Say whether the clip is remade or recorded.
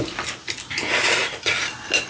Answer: recorded